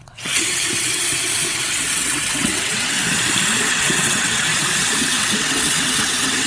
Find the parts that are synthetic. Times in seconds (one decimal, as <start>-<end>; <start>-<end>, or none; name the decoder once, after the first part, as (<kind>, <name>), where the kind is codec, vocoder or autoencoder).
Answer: 0.0-3.0 (vocoder, WaveNeXt); 3.7-4.5; 5.0-6.5